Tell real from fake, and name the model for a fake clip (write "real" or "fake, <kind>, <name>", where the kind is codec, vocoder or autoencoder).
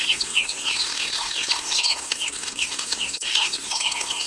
fake, codec, SNAC